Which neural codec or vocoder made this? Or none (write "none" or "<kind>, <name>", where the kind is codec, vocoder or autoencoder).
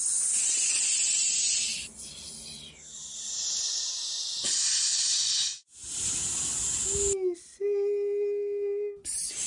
none